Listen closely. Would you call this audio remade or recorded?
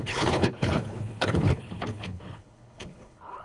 remade